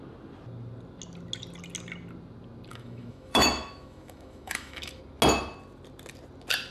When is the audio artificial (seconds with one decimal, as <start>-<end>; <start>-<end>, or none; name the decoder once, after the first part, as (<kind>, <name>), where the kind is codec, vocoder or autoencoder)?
2.7-5.0 (autoencoder, DAC-VAE)